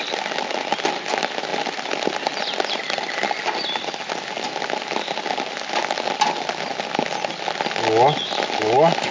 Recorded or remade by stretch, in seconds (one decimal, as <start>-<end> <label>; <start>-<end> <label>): 0.0-9.1 recorded

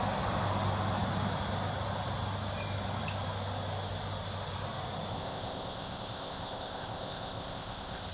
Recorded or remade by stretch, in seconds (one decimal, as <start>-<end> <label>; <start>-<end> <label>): 0.0-5.1 recorded; 5.1-8.1 remade

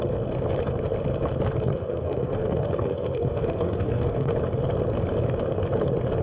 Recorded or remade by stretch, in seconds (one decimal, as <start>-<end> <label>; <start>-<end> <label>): 0.0-1.7 recorded; 1.7-4.3 remade; 4.3-6.2 recorded

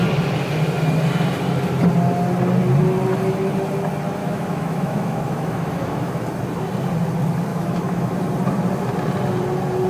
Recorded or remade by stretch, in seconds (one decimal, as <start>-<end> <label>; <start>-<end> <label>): 0.0-4.2 recorded; 4.2-6.1 remade; 6.1-7.5 recorded; 7.5-8.1 remade; 8.1-9.9 recorded

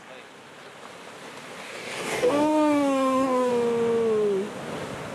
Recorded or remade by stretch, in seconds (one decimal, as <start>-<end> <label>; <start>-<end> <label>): 0.0-1.6 recorded; 1.6-3.5 remade; 3.5-5.1 recorded

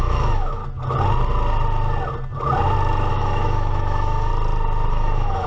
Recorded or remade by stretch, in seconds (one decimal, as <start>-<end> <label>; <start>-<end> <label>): 0.0-0.6 remade; 0.6-3.1 recorded; 3.1-4.3 remade; 4.3-4.9 recorded; 4.9-5.5 remade

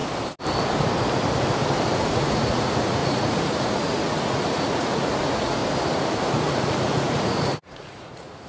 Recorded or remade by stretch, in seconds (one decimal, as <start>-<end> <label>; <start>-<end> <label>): 0.0-2.0 recorded; 2.0-5.6 remade; 5.6-6.1 recorded; 6.1-8.5 remade

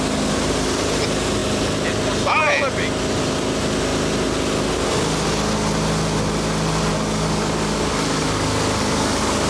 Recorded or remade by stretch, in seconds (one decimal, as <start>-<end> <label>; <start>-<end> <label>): 0.0-6.9 recorded; 6.9-9.5 remade